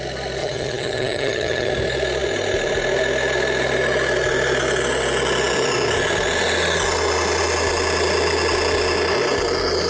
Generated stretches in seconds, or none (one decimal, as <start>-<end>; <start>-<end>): 0.4-1.7